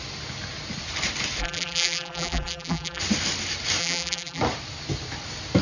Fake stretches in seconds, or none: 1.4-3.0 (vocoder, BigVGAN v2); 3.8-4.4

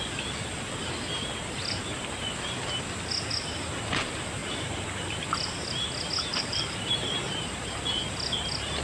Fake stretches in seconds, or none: 4.4-5.2 (vocoder, BigVGAN v2); 6.3-7.7

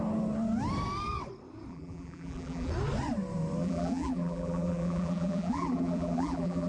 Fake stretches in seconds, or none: 1.7-2.7 (vocoder, BigVGAN v2); 3.6-6.7